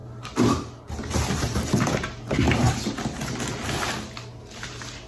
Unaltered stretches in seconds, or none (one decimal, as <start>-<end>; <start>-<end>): 0.0-5.1

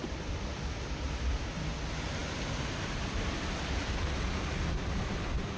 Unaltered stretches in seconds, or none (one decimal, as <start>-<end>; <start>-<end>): 0.0-5.6

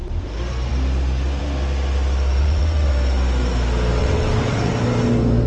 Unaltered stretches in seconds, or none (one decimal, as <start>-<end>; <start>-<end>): 0.0-2.4; 2.9-4.0; 4.7-5.5

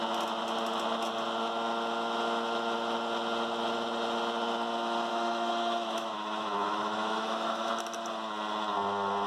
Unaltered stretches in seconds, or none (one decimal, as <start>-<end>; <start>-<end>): 0.0-5.1; 7.7-9.3

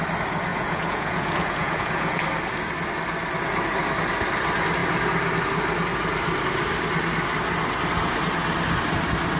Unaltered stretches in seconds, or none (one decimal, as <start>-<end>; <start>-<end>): 0.0-0.5; 2.2-9.4

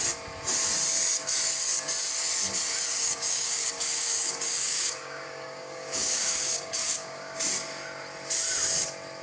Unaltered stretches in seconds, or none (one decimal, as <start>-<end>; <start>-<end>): 0.0-2.9; 7.4-9.2

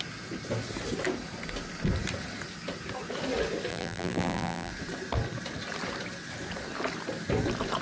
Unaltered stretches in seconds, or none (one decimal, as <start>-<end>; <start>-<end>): 0.0-3.7; 4.7-7.8